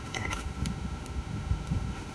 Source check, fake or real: fake